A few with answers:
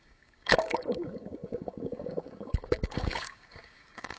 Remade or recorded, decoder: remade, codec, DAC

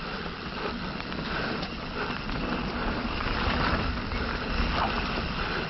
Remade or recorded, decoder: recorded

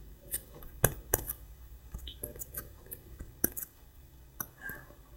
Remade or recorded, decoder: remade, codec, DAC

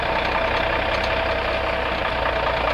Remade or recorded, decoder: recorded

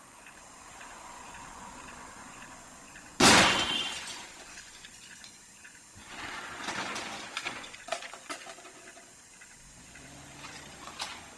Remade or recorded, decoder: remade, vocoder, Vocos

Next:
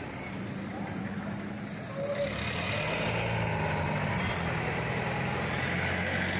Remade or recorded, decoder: recorded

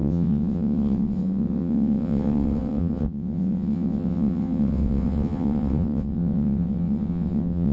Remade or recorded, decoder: remade, vocoder, WaveNeXt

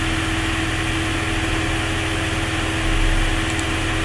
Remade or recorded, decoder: recorded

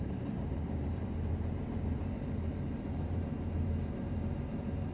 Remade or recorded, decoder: remade, vocoder, BigVGAN v2